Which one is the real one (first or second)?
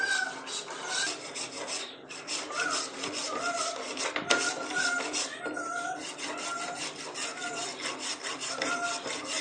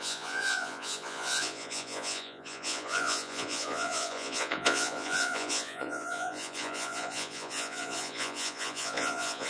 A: first